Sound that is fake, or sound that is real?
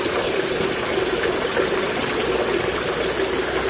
real